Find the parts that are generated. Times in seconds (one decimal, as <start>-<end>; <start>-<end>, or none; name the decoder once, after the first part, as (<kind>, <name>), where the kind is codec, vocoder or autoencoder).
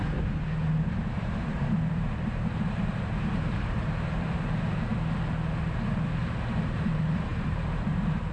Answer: 0.0-4.9 (vocoder, BigVGAN v2); 6.2-8.3